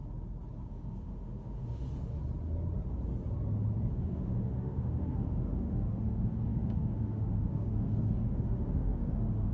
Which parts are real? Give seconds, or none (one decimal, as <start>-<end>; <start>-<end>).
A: 0.0-0.7; 2.2-3.9